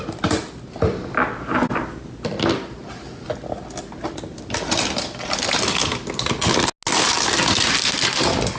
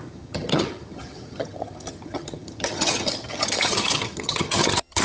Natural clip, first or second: first